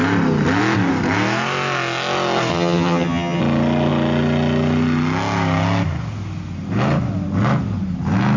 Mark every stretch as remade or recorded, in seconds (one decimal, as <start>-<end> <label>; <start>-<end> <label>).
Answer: 0.0-2.5 recorded; 2.5-3.4 remade; 3.4-8.4 recorded